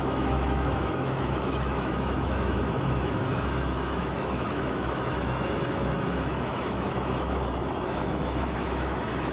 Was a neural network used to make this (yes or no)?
yes